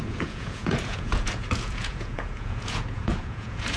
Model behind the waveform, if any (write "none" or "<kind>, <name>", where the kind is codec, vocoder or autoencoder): vocoder, Vocos